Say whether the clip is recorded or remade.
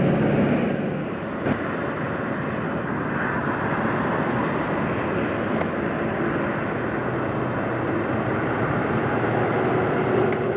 recorded